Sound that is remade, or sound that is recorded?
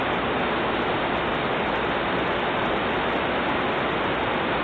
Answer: recorded